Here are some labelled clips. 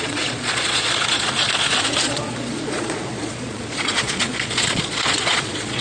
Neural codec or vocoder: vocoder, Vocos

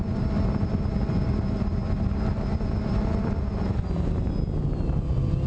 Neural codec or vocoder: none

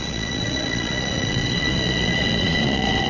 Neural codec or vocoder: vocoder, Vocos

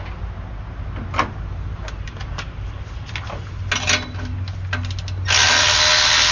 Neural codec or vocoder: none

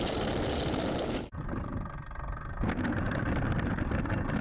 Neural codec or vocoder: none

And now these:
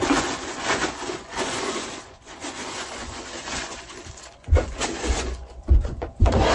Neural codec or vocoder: vocoder, Vocos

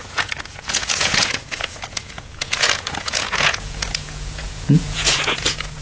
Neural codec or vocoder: vocoder, Vocos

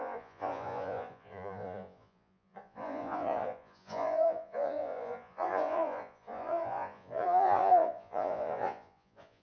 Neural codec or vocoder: vocoder, Vocos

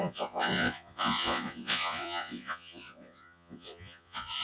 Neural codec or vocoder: vocoder, Vocos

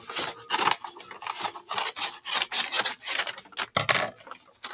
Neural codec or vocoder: none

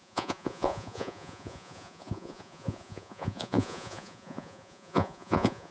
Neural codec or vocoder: vocoder, Vocos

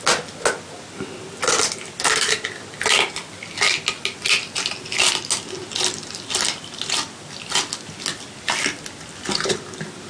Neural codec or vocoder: none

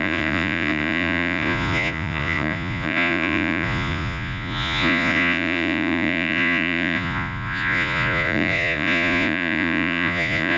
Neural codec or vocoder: vocoder, Vocos